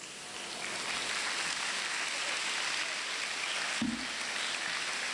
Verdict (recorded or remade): recorded